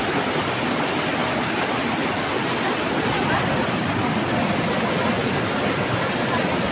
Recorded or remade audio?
recorded